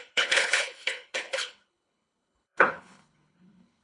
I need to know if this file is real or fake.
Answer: fake